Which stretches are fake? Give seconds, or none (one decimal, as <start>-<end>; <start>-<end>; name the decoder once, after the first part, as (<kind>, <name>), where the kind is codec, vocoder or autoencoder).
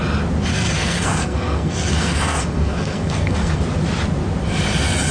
0.5-3.6 (codec, SNAC)